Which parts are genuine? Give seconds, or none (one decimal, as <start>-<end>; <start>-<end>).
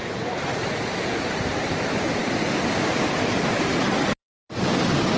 2.5-4.2